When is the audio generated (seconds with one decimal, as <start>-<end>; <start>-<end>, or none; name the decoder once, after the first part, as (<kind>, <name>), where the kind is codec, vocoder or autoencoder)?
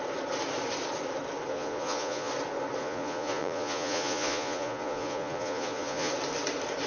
1.5-2.3 (vocoder, Vocos); 2.8-6.1